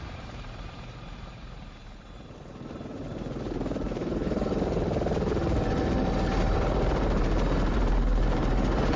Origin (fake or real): fake